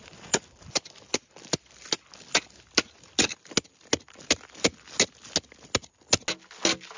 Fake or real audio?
real